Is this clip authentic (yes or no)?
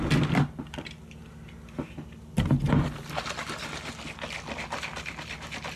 yes